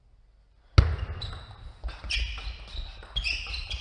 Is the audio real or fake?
real